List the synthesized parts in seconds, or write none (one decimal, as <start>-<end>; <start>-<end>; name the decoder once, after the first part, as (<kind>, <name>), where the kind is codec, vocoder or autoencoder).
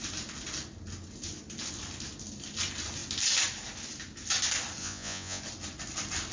4.8-5.4 (vocoder, Vocos)